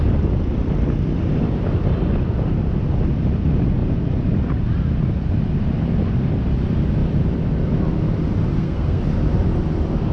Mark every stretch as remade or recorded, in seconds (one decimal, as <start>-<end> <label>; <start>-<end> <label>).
0.0-8.5 recorded; 8.5-9.0 remade; 9.0-10.1 recorded

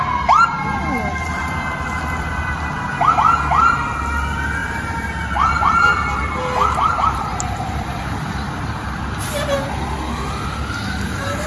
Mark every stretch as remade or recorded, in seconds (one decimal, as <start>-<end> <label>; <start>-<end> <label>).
0.0-4.6 recorded; 4.6-9.0 remade; 9.0-11.5 recorded

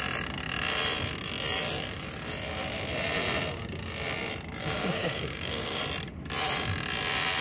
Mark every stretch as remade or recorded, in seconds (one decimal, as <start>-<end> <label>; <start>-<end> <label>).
0.0-4.6 recorded; 4.6-5.8 remade; 5.8-7.4 recorded

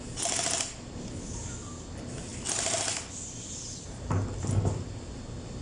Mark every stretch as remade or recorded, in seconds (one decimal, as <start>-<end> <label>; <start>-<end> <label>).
0.0-5.6 recorded

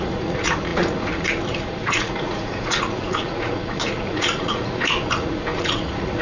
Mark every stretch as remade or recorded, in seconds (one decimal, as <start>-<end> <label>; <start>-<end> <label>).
0.0-6.2 remade

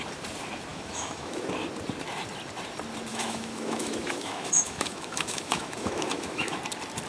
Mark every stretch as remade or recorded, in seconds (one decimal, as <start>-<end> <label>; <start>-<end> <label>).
0.0-0.7 recorded; 0.7-1.5 remade; 1.5-3.1 recorded; 3.1-6.6 remade; 6.6-7.1 recorded